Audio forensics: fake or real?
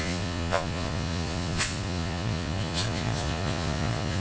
fake